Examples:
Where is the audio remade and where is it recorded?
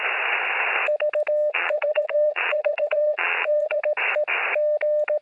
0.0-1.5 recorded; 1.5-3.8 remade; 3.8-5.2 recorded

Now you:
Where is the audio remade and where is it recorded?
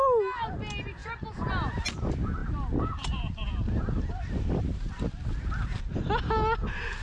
0.0-7.0 recorded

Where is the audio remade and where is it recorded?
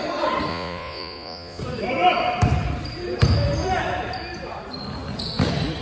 0.0-0.5 recorded; 0.5-1.6 remade; 1.6-5.8 recorded